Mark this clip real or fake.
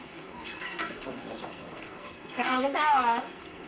fake